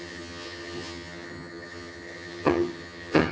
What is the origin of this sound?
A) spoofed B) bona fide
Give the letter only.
A